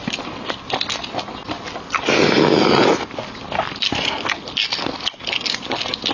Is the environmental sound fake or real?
real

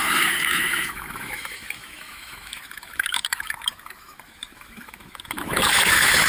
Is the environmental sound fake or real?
fake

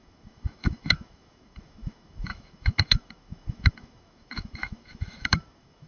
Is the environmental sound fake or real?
fake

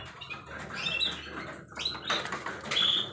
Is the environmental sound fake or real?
real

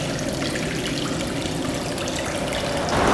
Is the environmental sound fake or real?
real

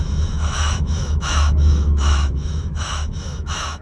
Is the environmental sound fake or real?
fake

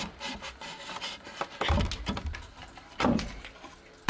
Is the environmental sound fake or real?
real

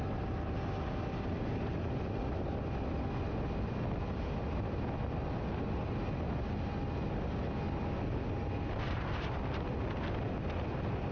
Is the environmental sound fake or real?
real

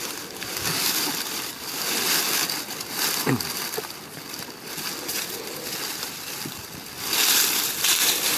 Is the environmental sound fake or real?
real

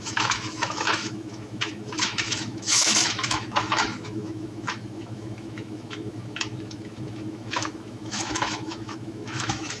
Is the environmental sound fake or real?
fake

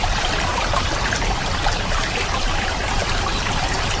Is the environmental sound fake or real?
real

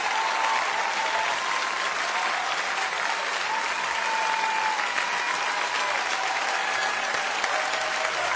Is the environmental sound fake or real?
real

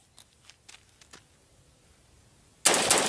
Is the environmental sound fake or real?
real